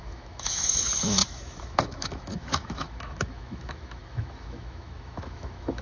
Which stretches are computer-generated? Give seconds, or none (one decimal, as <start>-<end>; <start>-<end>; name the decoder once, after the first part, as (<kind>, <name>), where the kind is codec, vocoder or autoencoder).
0.0-5.8 (autoencoder, DAC-VAE)